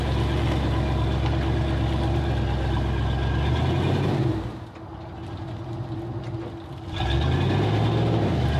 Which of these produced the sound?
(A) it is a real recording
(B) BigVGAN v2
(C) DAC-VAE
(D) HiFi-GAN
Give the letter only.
A